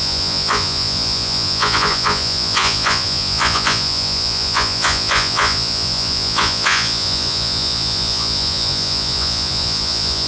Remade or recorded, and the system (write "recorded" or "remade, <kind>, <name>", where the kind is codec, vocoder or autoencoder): remade, vocoder, Vocos